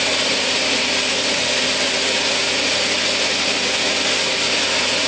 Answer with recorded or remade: remade